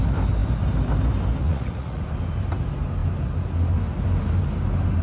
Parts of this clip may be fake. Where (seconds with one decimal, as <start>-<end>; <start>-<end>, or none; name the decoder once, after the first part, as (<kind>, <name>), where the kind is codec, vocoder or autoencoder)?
1.4-2.0 (vocoder, Vocos)